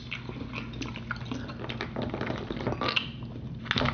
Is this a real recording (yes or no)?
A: yes